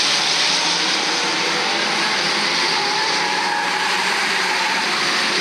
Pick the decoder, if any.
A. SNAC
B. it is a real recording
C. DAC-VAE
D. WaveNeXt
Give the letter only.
B